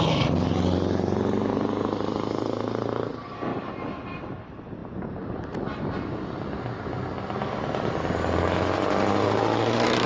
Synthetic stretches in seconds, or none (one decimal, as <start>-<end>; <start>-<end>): 1.5-3.1; 3.5-4.3; 4.8-5.8